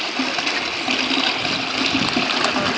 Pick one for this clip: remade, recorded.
recorded